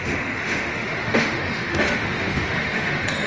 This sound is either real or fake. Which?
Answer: fake